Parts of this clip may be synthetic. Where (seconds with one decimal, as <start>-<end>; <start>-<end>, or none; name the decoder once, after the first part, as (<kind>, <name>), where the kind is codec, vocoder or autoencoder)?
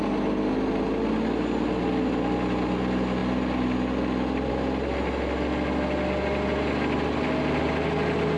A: none